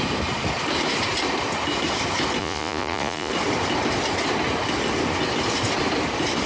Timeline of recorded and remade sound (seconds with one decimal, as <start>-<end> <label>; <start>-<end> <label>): 0.0-2.4 recorded; 2.4-3.3 remade; 3.3-6.5 recorded